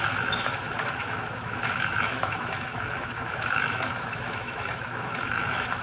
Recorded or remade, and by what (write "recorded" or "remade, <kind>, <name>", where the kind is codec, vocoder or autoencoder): remade, autoencoder, DAC-VAE